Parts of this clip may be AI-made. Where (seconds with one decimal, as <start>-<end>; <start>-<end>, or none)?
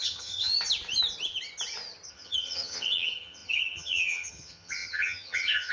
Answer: 0.0-0.5; 2.1-5.7